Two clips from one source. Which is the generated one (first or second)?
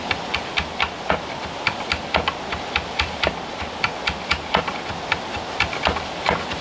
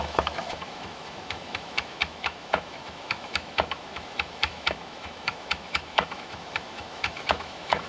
second